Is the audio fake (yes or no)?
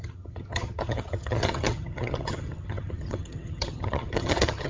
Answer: yes